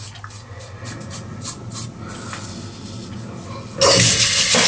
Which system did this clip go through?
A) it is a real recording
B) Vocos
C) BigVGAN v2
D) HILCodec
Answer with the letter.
A